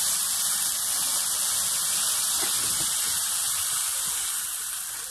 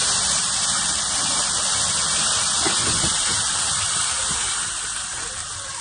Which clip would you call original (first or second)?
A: first